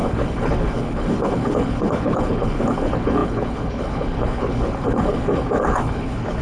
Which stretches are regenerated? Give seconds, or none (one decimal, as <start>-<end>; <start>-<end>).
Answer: 0.0-6.4